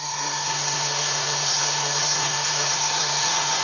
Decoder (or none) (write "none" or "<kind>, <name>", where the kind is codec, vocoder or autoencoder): codec, SNAC